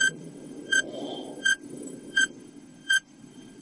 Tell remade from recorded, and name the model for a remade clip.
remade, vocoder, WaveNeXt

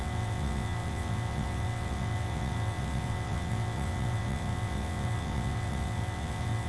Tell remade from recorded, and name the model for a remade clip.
remade, vocoder, WaveNeXt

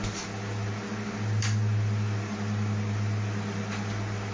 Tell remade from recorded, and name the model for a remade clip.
recorded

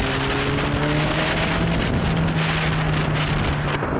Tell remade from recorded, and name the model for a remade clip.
recorded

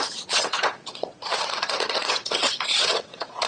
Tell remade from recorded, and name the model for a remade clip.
remade, vocoder, WaveNeXt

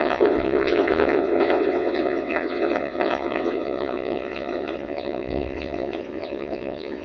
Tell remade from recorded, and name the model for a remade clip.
remade, vocoder, WaveNeXt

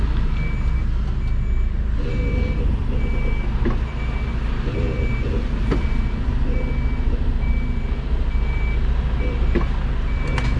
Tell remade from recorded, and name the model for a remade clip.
recorded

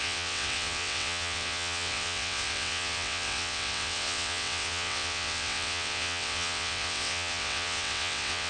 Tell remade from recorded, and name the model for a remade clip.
remade, vocoder, WaveNeXt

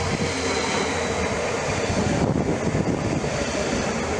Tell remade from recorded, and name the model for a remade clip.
recorded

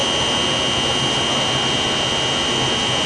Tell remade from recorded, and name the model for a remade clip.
recorded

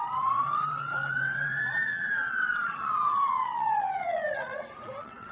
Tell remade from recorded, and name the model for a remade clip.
remade, vocoder, WaveNeXt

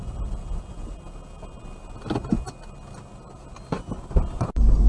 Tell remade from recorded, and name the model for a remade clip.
recorded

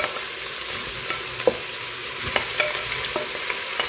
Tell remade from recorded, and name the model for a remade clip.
recorded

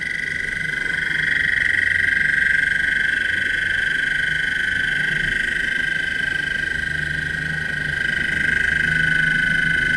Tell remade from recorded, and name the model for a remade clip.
recorded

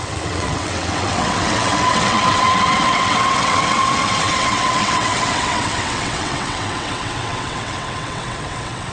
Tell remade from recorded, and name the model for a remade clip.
remade, vocoder, WaveNeXt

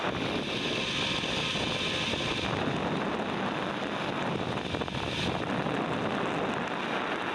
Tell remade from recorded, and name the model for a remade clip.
recorded